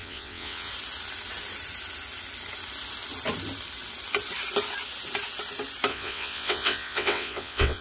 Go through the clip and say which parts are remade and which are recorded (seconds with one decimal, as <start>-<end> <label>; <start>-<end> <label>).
0.0-0.7 remade; 0.7-5.9 recorded; 5.9-7.8 remade